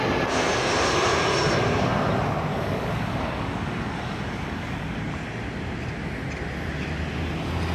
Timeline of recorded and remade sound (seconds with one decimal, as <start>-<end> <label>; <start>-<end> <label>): 0.0-2.5 recorded; 2.5-5.1 remade; 5.1-7.7 recorded